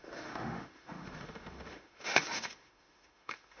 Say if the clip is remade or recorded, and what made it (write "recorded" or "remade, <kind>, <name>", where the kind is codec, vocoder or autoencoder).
remade, autoencoder, DAC-VAE